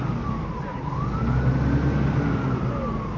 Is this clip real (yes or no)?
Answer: yes